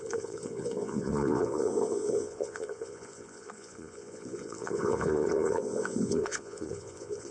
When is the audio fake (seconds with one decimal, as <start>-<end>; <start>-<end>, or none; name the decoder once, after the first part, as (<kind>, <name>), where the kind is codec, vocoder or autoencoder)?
0.0-7.3 (vocoder, Vocos)